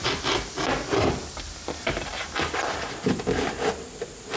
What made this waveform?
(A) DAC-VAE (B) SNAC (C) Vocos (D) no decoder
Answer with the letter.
D